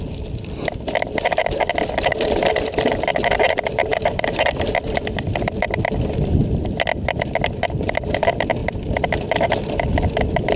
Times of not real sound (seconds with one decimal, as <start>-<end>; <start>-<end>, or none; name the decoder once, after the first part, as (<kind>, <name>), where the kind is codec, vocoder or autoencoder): 3.9-6.2 (vocoder, BigVGAN v2)